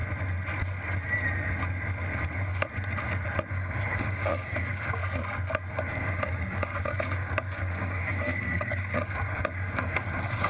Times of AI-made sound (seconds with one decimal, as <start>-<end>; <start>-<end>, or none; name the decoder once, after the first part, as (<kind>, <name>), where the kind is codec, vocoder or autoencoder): 3.5-5.0 (codec, DAC); 5.7-10.5